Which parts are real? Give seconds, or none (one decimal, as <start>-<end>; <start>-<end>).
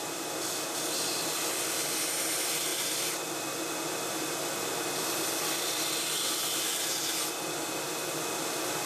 0.0-8.9